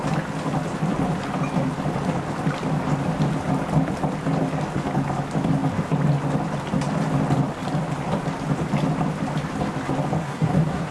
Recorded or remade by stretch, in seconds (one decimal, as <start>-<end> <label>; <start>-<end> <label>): 0.0-10.2 recorded; 10.2-10.9 remade